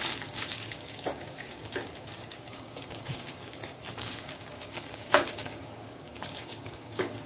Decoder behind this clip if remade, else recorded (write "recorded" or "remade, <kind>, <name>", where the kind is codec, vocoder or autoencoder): remade, codec, DAC